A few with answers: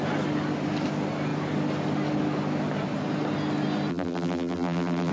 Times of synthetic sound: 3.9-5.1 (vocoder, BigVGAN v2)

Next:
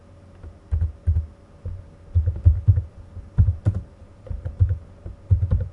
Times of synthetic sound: 4.0-5.7 (vocoder, BigVGAN v2)

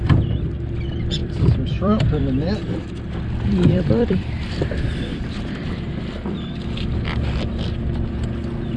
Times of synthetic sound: 1.2-2.2 (vocoder, BigVGAN v2); 3.5-4.7

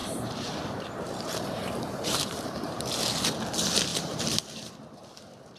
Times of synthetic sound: 0.0-2.8 (vocoder, BigVGAN v2); 3.9-4.7

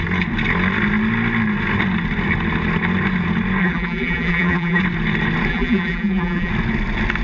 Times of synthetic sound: 3.6-4.8 (vocoder, BigVGAN v2); 5.5-6.5

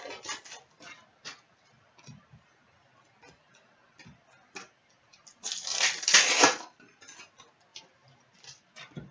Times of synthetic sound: 5.1-7.0 (vocoder, BigVGAN v2); 7.7-9.1

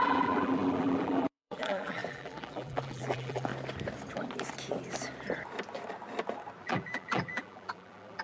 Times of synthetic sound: 0.0-3.5 (vocoder, BigVGAN v2); 6.6-8.2